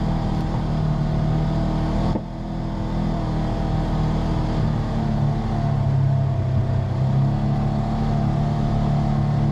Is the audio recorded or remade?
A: recorded